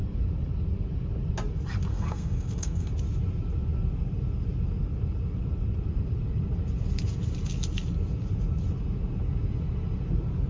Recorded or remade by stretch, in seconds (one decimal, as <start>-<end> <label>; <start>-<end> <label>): 0.0-1.9 recorded; 1.9-2.9 remade; 2.9-10.5 recorded